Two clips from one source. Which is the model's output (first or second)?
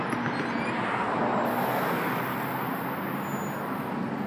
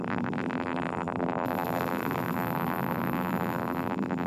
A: second